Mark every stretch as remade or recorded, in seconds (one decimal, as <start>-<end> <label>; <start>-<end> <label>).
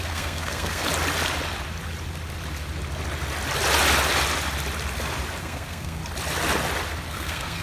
0.0-0.8 remade; 0.8-5.4 recorded; 5.4-6.0 remade; 6.0-7.1 recorded; 7.1-7.6 remade